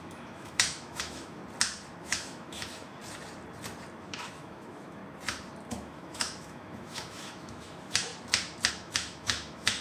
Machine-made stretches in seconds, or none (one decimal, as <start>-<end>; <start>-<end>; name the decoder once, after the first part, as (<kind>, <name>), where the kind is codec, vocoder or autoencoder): 0.0-1.4 (autoencoder, DAC-VAE); 2.0-3.0; 4.0-5.0; 5.7-8.1; 8.7-9.8